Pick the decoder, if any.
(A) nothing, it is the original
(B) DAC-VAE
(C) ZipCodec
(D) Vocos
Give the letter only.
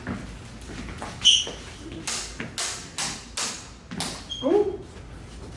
A